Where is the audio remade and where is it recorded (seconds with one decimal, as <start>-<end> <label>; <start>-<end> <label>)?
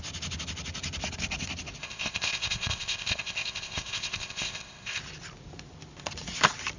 0.0-1.8 recorded; 1.8-5.0 remade; 5.0-6.8 recorded